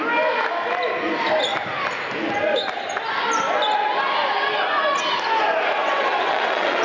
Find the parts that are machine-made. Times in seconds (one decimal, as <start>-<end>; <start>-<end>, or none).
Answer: 5.8-6.8